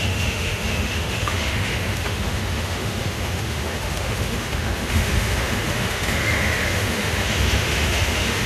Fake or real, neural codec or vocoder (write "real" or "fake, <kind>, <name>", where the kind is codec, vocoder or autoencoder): fake, autoencoder, DAC-VAE